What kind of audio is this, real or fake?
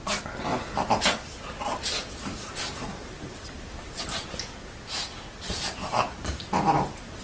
real